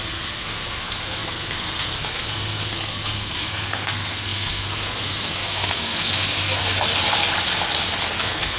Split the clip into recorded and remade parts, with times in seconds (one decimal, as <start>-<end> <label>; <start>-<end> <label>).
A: 0.0-6.6 remade; 6.6-8.2 recorded; 8.2-8.6 remade